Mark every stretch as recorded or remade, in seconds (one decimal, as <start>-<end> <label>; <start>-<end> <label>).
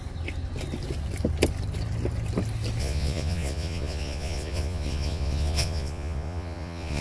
0.0-2.8 recorded; 2.8-7.0 remade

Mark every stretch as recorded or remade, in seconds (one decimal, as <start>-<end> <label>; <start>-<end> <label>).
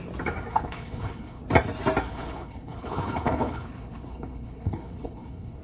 0.0-0.5 recorded; 0.5-1.4 remade; 1.4-2.1 recorded; 2.1-5.6 remade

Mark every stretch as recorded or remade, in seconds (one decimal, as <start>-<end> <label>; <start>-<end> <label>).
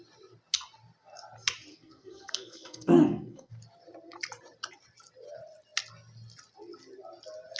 0.0-1.7 recorded; 1.7-3.5 remade; 3.5-7.6 recorded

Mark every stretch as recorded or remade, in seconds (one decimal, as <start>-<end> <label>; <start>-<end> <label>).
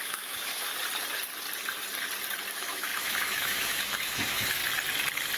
0.0-0.7 remade; 0.7-2.5 recorded; 2.5-4.6 remade; 4.6-5.4 recorded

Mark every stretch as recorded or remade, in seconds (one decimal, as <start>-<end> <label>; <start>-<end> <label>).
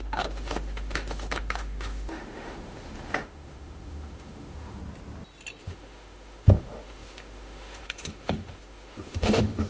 0.0-4.8 remade; 4.8-5.6 recorded; 5.6-9.7 remade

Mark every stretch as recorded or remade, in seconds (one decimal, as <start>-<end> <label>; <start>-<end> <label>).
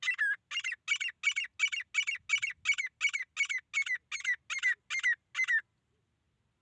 0.0-6.6 recorded